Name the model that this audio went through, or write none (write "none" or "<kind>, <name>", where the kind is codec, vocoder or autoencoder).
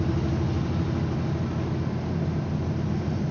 none